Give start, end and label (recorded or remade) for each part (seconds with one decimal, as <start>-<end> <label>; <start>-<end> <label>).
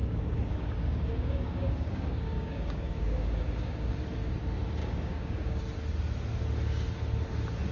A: 0.0-3.9 remade; 3.9-4.8 recorded; 4.8-5.6 remade; 5.6-7.7 recorded